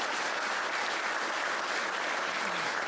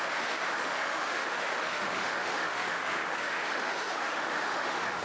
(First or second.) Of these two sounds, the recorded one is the first